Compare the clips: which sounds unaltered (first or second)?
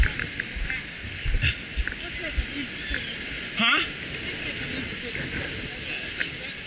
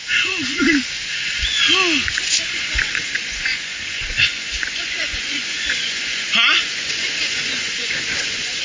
first